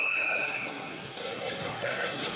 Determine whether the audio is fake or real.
fake